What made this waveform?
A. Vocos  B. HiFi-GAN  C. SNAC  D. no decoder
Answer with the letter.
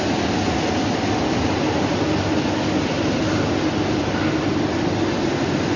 D